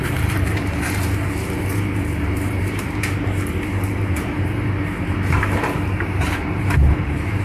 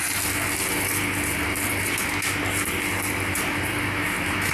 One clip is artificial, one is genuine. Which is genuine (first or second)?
second